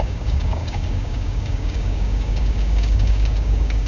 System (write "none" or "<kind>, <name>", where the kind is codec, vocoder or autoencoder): codec, DAC